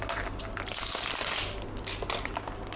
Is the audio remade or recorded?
recorded